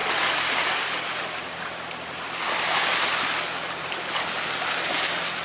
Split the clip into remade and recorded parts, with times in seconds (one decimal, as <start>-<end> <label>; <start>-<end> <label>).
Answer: 0.0-5.4 recorded